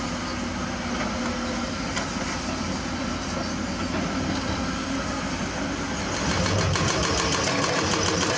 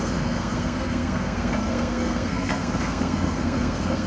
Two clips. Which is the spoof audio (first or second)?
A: second